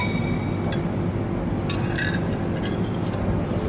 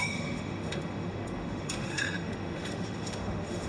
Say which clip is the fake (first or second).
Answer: second